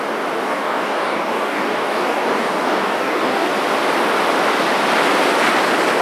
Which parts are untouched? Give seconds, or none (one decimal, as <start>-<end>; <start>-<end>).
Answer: 0.0-0.4; 3.5-6.0